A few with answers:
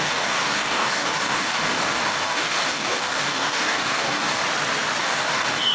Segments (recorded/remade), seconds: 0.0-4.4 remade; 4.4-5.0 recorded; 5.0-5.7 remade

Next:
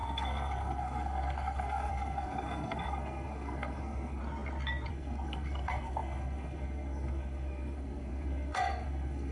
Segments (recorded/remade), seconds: 0.0-4.2 remade; 4.2-4.9 recorded; 4.9-9.3 remade

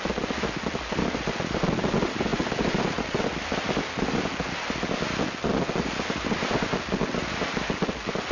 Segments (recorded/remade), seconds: 0.0-8.3 recorded

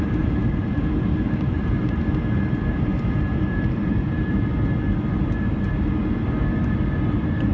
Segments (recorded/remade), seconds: 0.0-4.5 remade; 4.5-7.1 recorded; 7.1-7.5 remade

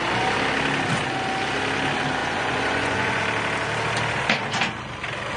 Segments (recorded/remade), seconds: 0.0-2.2 recorded; 2.2-3.2 remade; 3.2-5.4 recorded

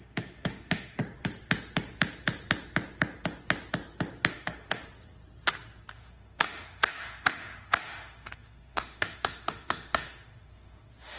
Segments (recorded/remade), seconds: 0.0-1.0 remade; 1.0-4.3 recorded; 4.3-4.8 remade; 4.8-5.9 recorded; 5.9-11.2 remade